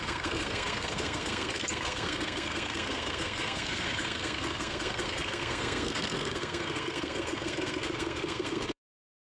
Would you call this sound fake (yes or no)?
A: yes